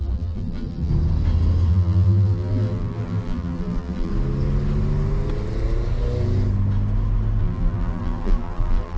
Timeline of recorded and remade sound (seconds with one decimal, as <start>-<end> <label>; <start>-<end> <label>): 0.0-0.9 remade; 0.9-1.7 recorded; 1.7-4.1 remade; 4.1-7.4 recorded; 7.4-9.0 remade